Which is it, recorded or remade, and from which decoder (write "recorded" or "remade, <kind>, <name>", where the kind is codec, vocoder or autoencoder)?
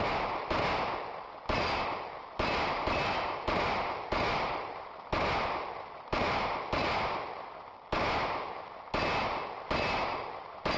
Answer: recorded